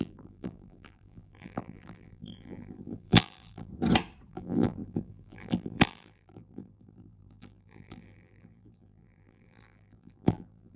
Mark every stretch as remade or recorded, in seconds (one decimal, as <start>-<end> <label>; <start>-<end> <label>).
0.0-3.7 remade; 3.7-4.3 recorded; 4.3-10.8 remade